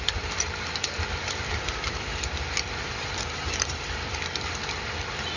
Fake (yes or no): yes